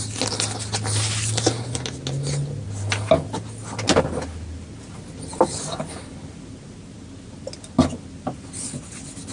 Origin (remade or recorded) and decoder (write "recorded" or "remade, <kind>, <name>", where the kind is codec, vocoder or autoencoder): recorded